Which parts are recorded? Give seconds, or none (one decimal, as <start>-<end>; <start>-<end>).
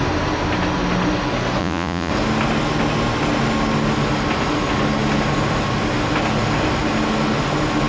0.0-1.6; 2.1-7.9